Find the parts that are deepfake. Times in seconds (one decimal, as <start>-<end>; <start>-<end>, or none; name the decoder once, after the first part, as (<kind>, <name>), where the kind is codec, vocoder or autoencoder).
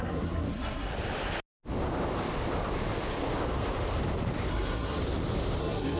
0.0-0.9 (codec, SNAC); 4.5-5.0; 5.6-6.0